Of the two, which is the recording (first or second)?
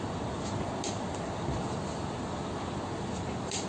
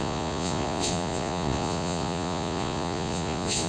first